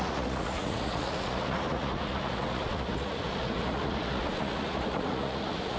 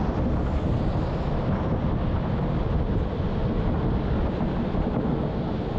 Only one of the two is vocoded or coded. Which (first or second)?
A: first